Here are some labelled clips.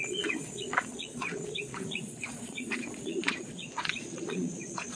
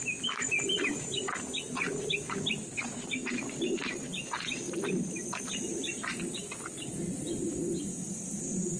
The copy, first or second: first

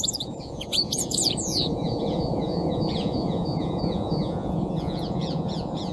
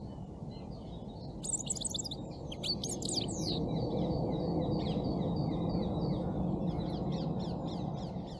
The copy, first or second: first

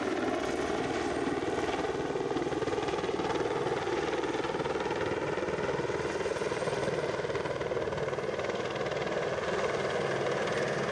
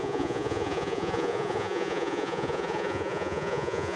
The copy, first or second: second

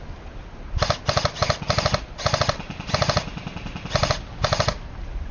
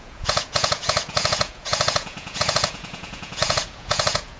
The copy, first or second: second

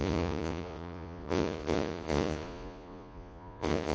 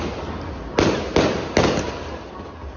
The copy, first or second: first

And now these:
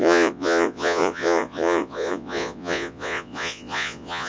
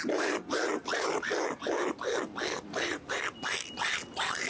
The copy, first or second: first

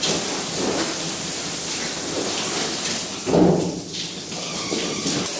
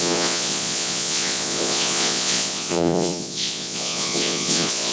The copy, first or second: second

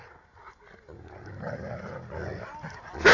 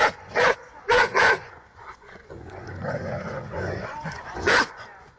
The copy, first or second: second